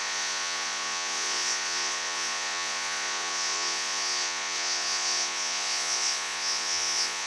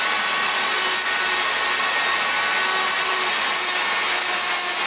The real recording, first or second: second